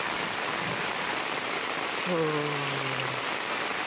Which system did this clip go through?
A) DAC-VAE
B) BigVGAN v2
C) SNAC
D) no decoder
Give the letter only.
D